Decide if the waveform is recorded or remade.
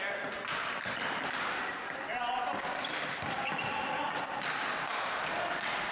recorded